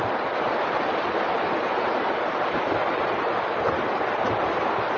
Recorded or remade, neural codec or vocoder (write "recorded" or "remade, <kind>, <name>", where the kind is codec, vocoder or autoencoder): recorded